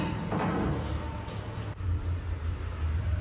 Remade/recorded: remade